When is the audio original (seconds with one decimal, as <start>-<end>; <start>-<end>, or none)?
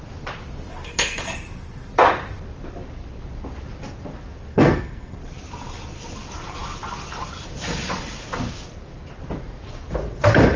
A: 0.0-0.7; 1.9-4.5; 5.2-10.6